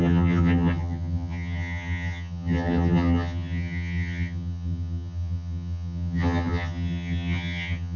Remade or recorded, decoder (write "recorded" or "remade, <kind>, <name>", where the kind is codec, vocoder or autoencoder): remade, vocoder, HiFi-GAN